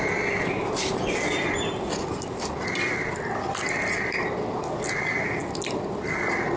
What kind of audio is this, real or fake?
real